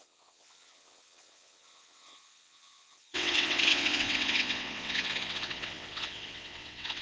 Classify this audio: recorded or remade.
remade